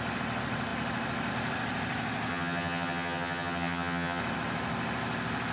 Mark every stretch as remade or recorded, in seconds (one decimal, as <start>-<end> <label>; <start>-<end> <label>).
0.0-2.3 recorded; 2.3-4.2 remade; 4.2-5.5 recorded